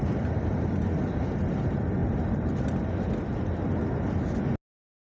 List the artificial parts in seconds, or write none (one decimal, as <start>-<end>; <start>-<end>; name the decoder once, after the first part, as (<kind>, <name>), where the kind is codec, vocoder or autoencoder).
none

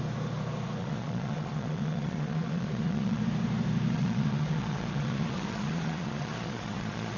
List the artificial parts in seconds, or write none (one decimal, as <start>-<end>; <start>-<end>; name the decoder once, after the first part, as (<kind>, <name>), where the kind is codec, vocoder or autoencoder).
0.8-3.2 (vocoder, Vocos); 3.9-7.2

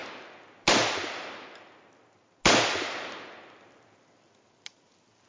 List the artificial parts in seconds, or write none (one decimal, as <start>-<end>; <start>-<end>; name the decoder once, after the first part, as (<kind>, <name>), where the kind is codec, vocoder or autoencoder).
none

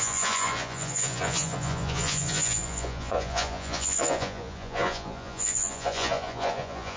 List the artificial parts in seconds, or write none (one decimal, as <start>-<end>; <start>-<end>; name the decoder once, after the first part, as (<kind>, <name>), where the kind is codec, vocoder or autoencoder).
0.0-7.0 (vocoder, Vocos)

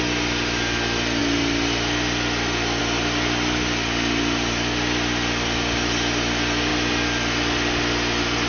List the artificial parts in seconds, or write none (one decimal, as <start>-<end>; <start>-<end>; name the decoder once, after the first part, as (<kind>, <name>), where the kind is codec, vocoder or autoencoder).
none

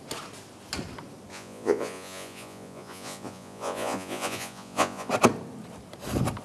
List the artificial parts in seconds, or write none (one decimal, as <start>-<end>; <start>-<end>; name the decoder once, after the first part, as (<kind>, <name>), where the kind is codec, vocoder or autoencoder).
1.3-5.1 (vocoder, Vocos)